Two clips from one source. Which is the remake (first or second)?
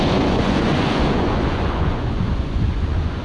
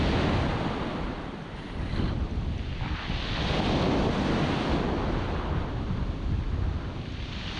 first